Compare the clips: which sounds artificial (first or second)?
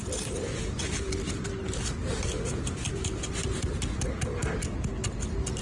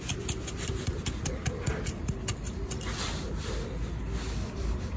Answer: second